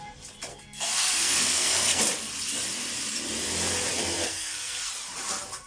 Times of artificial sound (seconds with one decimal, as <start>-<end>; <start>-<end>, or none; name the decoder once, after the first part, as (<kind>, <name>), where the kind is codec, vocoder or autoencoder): 0.5-2.0 (codec, SNAC); 3.9-4.9